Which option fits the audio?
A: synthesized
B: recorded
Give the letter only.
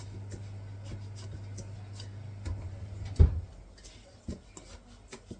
B